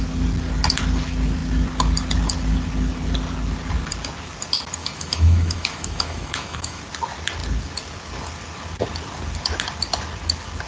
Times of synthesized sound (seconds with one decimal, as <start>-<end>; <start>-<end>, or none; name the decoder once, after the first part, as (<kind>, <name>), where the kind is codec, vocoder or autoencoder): 4.8-6.8 (autoencoder, DAC-VAE)